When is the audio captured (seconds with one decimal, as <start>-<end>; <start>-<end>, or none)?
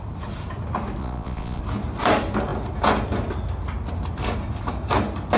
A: 0.0-1.0; 1.6-5.4